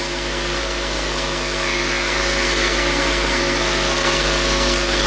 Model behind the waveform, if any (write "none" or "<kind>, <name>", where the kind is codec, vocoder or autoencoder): codec, SNAC